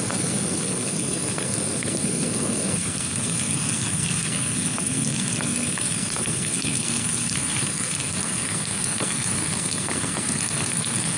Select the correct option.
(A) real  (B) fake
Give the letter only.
B